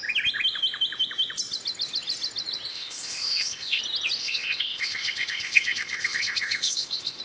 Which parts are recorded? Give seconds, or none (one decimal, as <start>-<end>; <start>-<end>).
0.0-2.7; 3.8-4.2